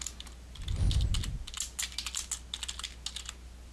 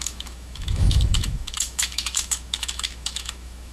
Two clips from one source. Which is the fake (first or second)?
second